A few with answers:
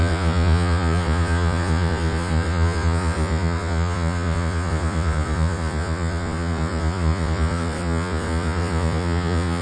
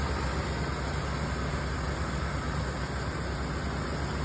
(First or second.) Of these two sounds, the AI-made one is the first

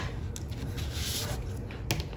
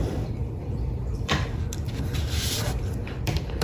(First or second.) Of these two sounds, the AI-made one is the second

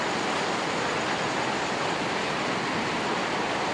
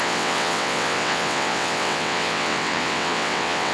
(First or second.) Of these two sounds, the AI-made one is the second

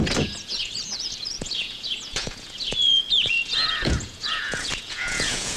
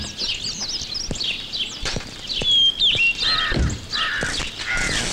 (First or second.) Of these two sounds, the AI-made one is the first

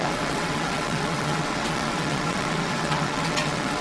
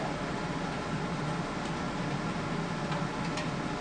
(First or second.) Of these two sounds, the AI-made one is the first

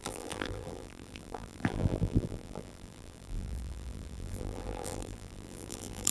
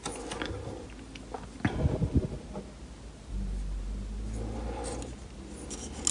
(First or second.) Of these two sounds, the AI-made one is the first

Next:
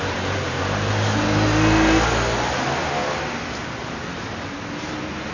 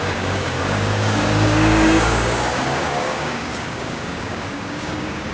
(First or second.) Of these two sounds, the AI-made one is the second